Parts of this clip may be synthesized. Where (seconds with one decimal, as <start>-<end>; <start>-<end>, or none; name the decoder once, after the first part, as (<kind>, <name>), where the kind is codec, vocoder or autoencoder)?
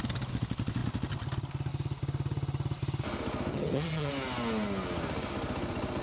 3.5-4.1 (vocoder, HiFi-GAN)